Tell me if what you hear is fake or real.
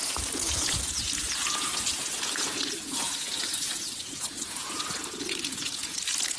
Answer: fake